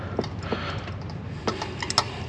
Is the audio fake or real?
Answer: real